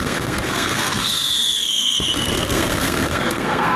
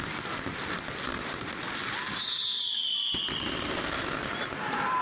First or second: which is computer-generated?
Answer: first